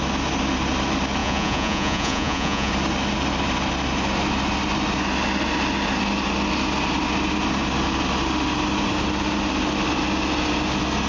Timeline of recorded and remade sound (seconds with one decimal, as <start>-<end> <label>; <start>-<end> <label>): 0.0-1.2 recorded; 1.2-2.7 remade; 2.7-11.1 recorded